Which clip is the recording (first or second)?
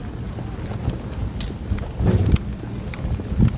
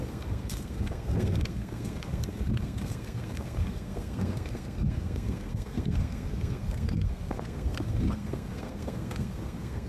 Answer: first